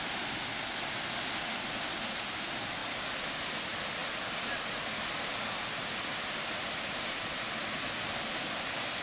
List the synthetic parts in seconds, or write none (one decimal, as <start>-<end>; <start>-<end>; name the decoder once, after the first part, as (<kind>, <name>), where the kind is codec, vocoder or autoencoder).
none